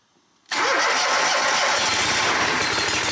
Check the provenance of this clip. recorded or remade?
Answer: recorded